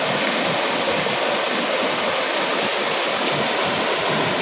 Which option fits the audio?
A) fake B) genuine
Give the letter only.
B